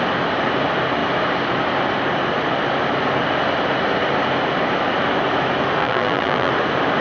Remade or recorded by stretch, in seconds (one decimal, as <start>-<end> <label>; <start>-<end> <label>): 0.0-5.8 recorded; 5.8-6.5 remade; 6.5-7.0 recorded